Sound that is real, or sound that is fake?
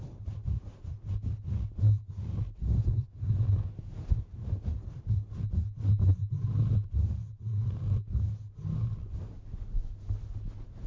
real